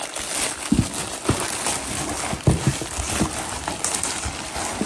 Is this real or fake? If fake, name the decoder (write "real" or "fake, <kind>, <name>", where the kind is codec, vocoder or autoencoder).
real